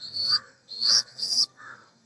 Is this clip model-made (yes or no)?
yes